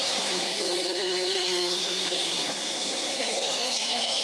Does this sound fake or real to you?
fake